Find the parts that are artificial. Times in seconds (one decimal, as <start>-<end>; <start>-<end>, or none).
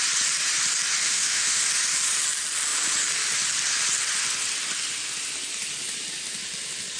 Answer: 1.0-1.6